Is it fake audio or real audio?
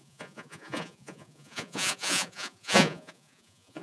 fake